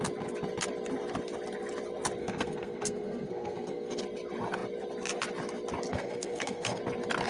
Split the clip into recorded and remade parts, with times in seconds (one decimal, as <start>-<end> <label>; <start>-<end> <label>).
0.0-2.2 recorded; 2.2-4.0 remade; 4.0-5.9 recorded; 5.9-6.8 remade; 6.8-7.3 recorded